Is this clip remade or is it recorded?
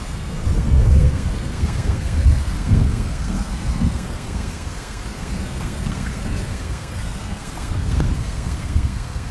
remade